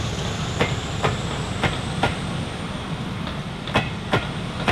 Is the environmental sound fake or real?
real